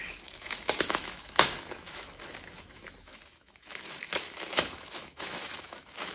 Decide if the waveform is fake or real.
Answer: fake